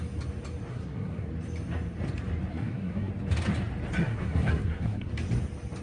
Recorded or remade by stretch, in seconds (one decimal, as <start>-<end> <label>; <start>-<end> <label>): 0.0-0.7 recorded; 0.7-1.3 remade; 1.3-2.5 recorded; 2.5-3.1 remade; 3.1-4.0 recorded; 4.0-5.1 remade; 5.1-5.8 recorded